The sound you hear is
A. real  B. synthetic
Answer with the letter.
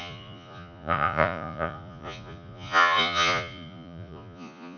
B